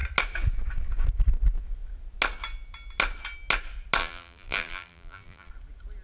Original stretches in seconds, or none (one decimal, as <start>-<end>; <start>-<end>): 0.0-4.0; 5.5-6.0